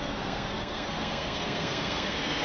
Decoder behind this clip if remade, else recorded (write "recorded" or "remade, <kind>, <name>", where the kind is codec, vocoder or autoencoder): remade, codec, SNAC